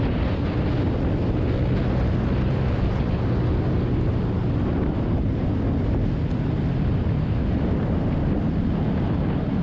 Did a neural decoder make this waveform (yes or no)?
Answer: no